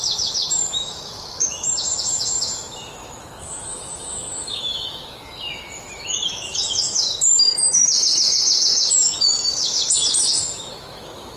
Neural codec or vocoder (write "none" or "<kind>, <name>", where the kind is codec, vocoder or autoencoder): autoencoder, DAC-VAE